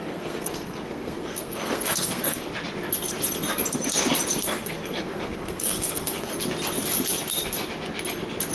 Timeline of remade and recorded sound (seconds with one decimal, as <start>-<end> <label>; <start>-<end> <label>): 0.0-2.4 remade; 2.4-4.4 recorded; 4.4-6.3 remade; 6.3-8.5 recorded